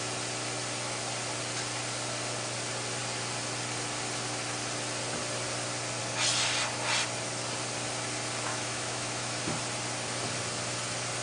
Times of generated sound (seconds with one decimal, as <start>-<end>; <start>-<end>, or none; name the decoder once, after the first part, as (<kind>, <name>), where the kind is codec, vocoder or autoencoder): 8.5-9.4 (autoencoder, DAC-VAE)